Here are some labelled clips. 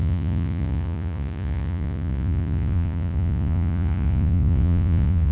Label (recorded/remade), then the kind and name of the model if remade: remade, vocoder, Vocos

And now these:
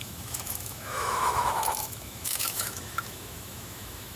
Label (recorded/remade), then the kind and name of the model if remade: remade, autoencoder, DAC-VAE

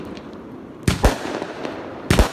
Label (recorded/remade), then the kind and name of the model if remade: recorded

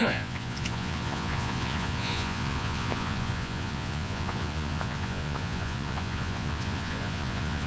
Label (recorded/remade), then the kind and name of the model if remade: remade, vocoder, Vocos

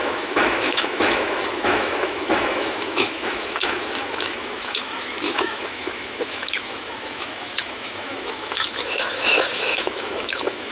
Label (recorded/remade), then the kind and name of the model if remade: remade, autoencoder, DAC-VAE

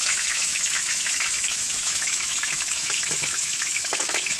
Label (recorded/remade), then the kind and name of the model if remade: remade, autoencoder, DAC-VAE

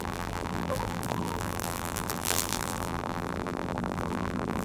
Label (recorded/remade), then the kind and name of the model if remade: remade, vocoder, BigVGAN v2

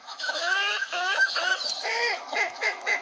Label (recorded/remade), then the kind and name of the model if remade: remade, autoencoder, DAC-VAE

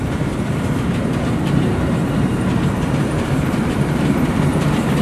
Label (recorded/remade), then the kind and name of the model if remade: remade, vocoder, BigVGAN v2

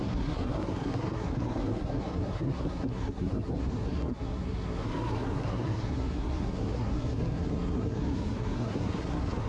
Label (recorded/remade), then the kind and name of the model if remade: remade, codec, SNAC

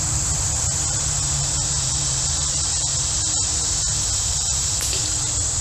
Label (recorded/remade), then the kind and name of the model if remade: remade, vocoder, BigVGAN v2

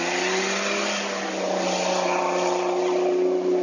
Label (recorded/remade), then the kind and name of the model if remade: recorded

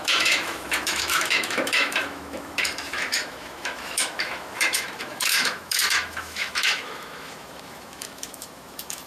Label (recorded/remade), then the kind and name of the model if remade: remade, autoencoder, DAC-VAE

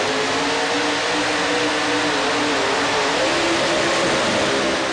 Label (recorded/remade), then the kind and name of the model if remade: recorded